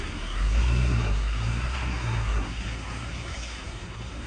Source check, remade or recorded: remade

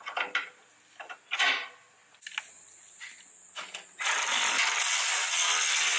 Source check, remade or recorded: recorded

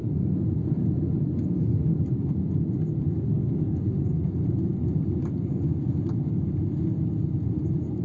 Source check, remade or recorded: recorded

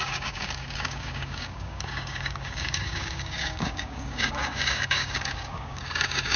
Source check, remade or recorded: remade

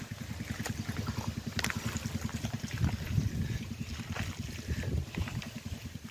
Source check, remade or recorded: recorded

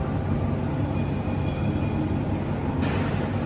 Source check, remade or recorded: recorded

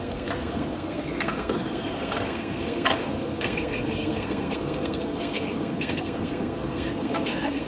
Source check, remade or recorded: remade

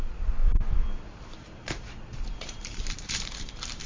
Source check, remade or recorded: remade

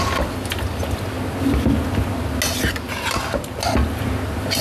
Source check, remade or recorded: recorded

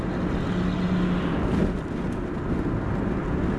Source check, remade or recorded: recorded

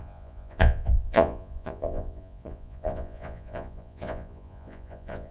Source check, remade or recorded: remade